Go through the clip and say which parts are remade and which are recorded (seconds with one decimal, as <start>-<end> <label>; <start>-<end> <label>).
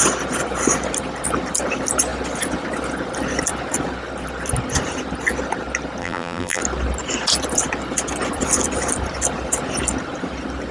0.0-6.0 recorded; 6.0-6.6 remade; 6.6-10.7 recorded